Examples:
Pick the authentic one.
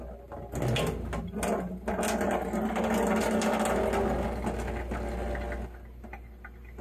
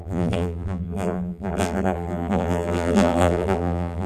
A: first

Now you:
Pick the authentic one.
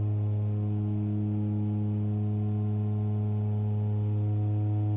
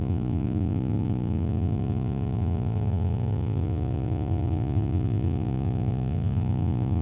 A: first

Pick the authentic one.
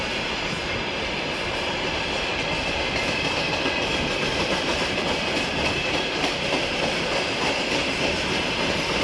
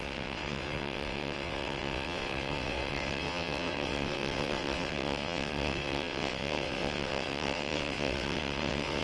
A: first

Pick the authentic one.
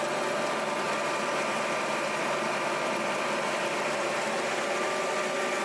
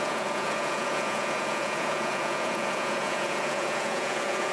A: first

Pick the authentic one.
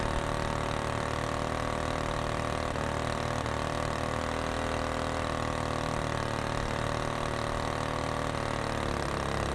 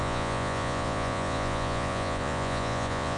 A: first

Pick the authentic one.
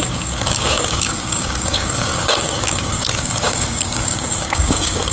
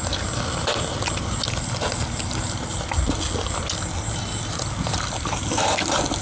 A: second